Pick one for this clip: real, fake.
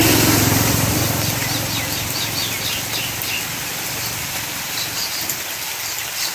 real